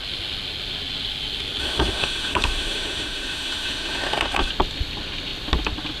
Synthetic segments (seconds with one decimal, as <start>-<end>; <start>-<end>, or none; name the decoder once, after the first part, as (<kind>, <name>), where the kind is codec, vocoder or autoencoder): 1.6-4.5 (autoencoder, DAC-VAE)